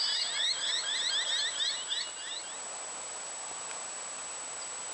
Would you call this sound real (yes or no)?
yes